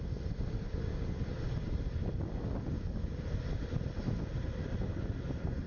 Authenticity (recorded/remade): recorded